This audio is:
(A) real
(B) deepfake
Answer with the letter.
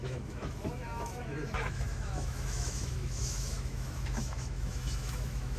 B